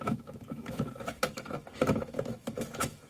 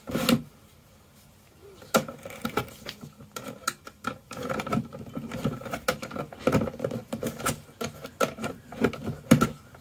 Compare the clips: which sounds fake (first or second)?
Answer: first